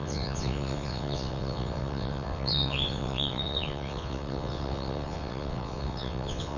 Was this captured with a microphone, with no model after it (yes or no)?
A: no